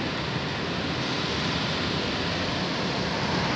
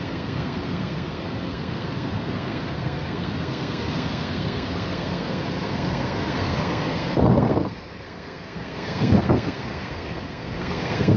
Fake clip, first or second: second